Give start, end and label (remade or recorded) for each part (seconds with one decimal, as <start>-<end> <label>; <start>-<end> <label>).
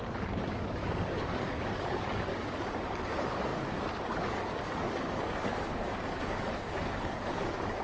0.0-7.8 remade